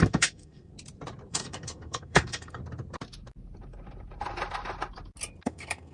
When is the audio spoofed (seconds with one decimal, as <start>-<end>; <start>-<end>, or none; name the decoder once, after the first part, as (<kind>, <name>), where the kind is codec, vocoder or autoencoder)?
0.0-0.7 (codec, SNAC); 1.3-2.6; 5.4-5.9